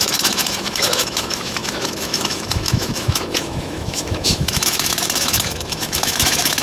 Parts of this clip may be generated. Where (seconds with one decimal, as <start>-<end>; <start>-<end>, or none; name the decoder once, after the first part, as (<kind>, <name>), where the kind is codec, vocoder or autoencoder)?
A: 0.0-6.6 (autoencoder, DAC-VAE)